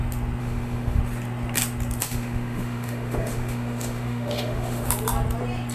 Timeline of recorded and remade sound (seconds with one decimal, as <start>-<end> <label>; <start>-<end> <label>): 0.0-0.4 recorded; 0.4-1.0 remade; 1.0-2.0 recorded; 2.0-4.9 remade; 4.9-5.7 recorded

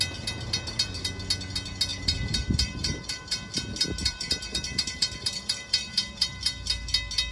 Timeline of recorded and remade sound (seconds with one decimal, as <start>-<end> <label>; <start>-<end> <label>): 0.0-1.9 recorded; 1.9-3.2 remade; 3.2-4.0 recorded; 4.0-6.4 remade; 6.4-7.3 recorded

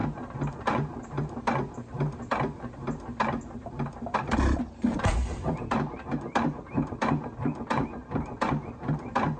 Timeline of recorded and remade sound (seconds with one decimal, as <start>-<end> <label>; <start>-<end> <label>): 0.0-9.4 remade

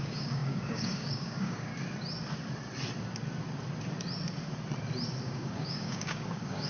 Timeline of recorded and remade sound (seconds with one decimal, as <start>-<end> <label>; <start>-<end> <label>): 0.0-1.7 remade; 1.7-5.2 recorded; 5.2-6.7 remade

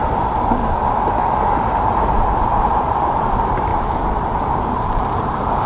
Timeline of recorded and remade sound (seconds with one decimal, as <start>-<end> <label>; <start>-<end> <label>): 0.0-0.6 remade; 0.6-1.7 recorded; 1.7-3.7 remade; 3.7-4.7 recorded; 4.7-5.7 remade

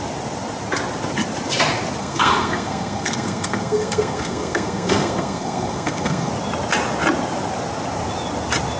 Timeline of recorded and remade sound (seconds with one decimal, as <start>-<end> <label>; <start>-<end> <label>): 0.0-2.0 recorded; 2.0-6.3 remade; 6.3-8.8 recorded

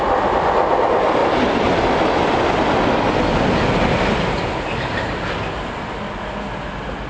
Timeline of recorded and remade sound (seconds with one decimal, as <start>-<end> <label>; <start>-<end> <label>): 0.0-7.1 recorded